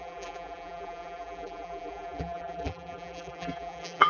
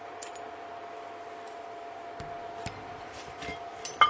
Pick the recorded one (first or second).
second